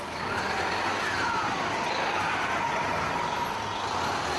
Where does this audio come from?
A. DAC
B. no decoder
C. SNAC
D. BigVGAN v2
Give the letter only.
B